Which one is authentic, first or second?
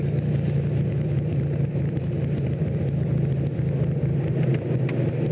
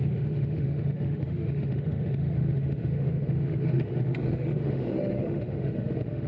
first